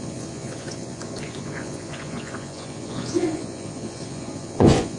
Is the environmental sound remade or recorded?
remade